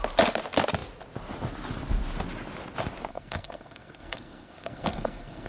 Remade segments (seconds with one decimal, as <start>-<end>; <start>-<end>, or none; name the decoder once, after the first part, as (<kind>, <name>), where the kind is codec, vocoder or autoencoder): 3.1-5.5 (codec, SNAC)